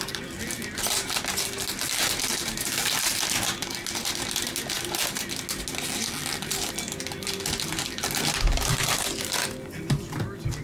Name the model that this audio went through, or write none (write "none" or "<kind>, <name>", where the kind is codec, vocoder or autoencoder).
none